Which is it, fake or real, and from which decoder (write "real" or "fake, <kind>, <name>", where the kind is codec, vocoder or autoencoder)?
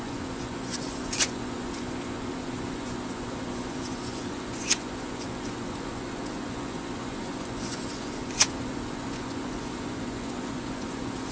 fake, vocoder, Vocos